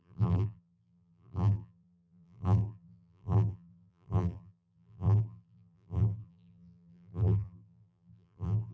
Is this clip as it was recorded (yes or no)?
no